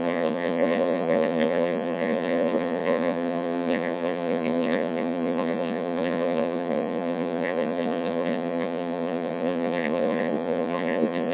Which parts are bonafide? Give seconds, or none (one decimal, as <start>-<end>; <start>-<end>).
none